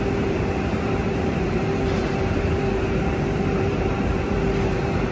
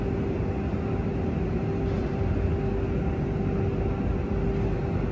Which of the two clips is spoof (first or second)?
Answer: first